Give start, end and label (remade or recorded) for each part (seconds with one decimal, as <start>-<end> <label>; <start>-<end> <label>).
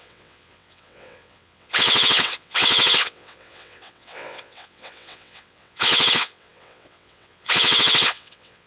0.0-8.7 remade